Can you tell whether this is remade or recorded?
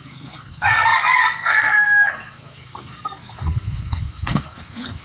remade